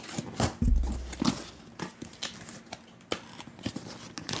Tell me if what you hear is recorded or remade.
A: recorded